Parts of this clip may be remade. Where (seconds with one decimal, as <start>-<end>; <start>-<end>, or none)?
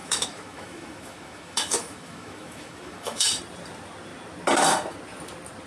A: 0.0-3.4